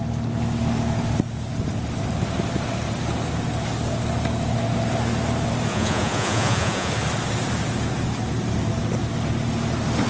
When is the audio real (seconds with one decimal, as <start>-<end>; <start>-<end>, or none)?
0.0-5.7; 6.9-10.1